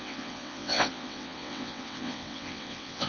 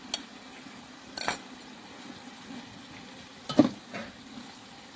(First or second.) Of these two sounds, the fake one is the first